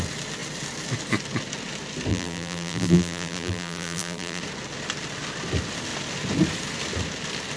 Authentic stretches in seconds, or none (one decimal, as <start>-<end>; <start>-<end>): 0.0-2.1; 4.4-7.6